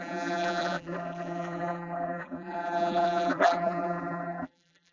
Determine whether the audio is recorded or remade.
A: remade